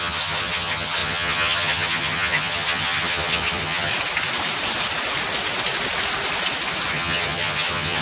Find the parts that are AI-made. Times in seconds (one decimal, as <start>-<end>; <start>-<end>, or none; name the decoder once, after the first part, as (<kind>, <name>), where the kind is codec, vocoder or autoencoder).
0.0-3.9 (vocoder, HiFi-GAN); 6.9-8.0